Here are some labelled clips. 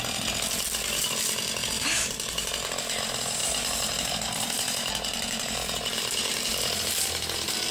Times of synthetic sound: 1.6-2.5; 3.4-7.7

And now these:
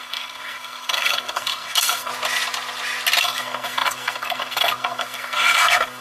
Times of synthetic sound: 0.0-2.1; 3.2-6.0

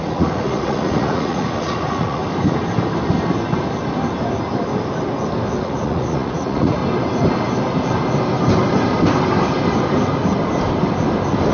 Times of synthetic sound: 0.0-2.2; 5.6-6.8

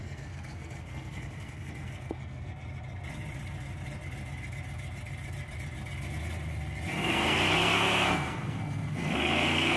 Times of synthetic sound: 0.0-2.5; 6.9-9.8

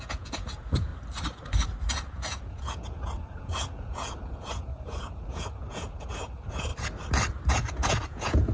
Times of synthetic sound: 0.0-0.9; 1.9-6.7; 7.5-8.5